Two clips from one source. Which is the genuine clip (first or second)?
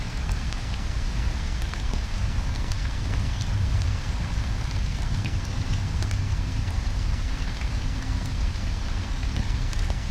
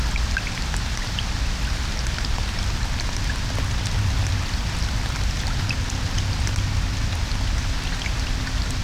second